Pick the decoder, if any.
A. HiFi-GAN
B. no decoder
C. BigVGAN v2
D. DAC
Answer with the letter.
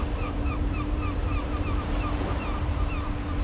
C